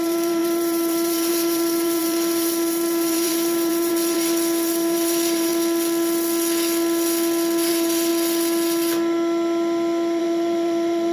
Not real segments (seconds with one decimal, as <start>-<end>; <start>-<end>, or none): 0.0-5.5; 7.7-8.1; 10.2-11.1